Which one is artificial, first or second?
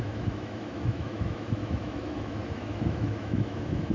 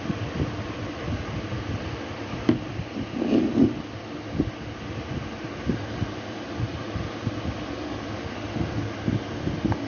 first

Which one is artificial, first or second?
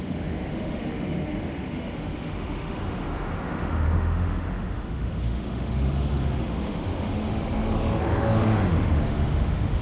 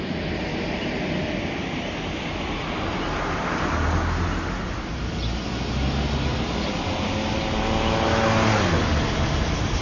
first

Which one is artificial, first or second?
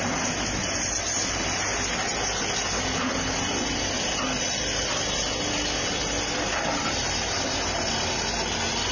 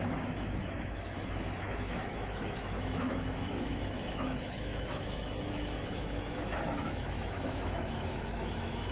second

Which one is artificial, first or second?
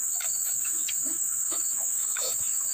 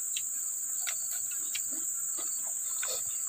first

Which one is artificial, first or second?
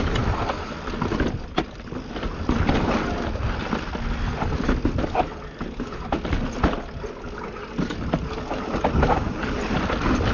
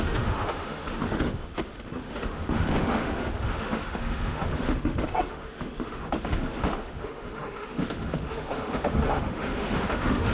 second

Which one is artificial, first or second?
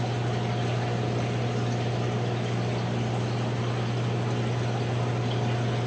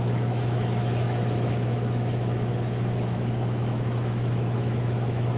second